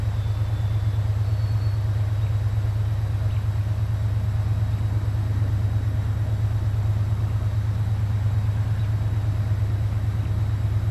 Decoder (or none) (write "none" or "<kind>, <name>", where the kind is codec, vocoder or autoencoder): vocoder, BigVGAN v2